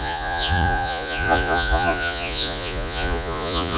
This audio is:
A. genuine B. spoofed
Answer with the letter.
B